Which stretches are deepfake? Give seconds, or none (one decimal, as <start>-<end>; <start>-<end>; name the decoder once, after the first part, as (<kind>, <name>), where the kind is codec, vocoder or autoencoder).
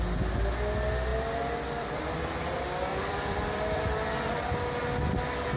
1.1-2.1 (vocoder, BigVGAN v2); 2.9-3.8